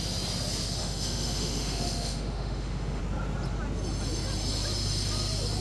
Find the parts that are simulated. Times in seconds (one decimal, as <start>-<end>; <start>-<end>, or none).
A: 0.8-3.0